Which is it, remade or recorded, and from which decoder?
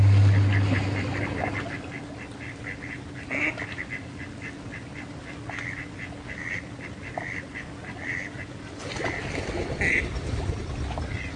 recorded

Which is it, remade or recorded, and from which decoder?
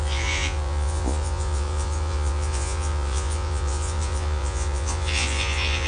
remade, vocoder, Vocos